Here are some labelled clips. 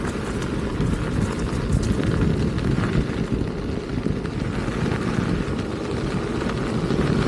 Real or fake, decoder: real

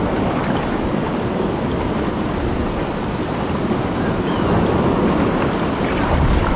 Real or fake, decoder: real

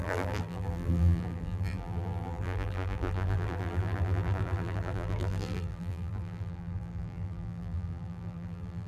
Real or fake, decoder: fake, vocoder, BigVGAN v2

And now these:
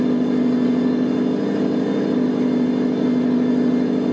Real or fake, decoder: real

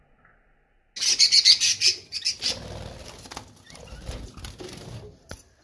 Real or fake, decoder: real